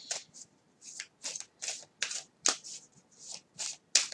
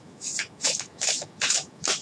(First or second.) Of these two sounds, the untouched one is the first